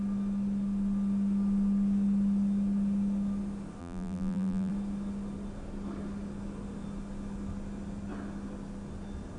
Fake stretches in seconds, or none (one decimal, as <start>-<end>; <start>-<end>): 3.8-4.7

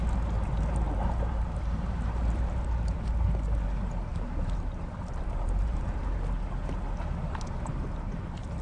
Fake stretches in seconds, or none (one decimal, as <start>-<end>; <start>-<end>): 0.8-3.3; 4.1-6.0

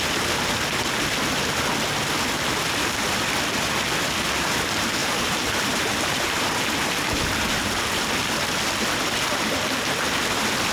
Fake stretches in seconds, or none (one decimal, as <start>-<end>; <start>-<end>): 5.0-6.5

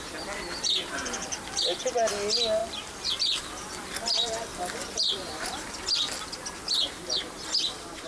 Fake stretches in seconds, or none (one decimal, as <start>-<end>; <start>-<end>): 2.6-3.2; 4.5-6.2

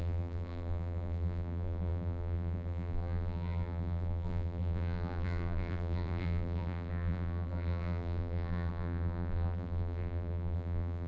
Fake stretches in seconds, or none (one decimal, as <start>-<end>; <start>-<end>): 0.0-11.1

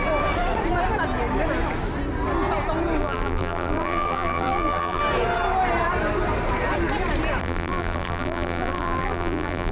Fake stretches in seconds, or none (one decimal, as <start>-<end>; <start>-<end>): 3.0-5.0; 7.4-9.7

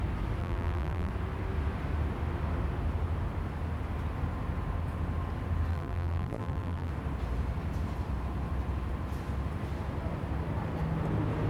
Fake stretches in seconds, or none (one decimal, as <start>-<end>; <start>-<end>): 0.4-1.1; 5.7-6.9

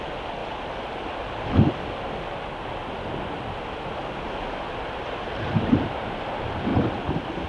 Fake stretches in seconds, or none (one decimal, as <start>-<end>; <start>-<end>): 0.0-0.4; 4.7-6.7